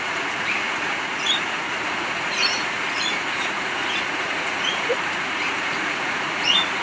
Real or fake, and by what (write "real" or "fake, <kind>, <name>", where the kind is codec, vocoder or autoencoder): fake, vocoder, Vocos